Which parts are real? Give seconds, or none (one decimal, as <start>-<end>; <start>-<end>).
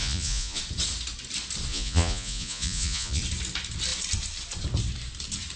0.6-1.7; 3.2-5.6